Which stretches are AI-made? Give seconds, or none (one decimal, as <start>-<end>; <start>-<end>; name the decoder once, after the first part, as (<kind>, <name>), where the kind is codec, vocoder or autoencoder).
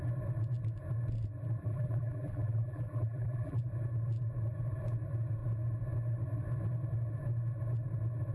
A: 1.6-3.6 (vocoder, BigVGAN v2)